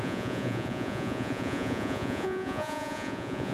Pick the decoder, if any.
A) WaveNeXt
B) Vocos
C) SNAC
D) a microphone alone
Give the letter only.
B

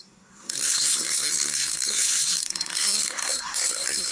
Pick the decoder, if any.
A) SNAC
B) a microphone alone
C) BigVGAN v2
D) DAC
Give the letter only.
A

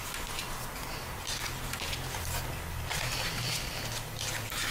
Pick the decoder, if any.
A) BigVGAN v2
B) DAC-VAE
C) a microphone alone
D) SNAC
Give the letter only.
A